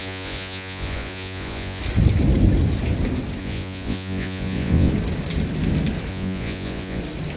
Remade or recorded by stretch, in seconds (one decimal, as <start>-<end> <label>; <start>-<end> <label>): 0.0-1.8 remade; 1.8-3.4 recorded; 3.4-4.9 remade; 4.9-6.1 recorded; 6.1-7.0 remade; 7.0-7.4 recorded